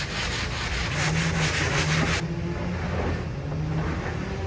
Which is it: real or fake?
real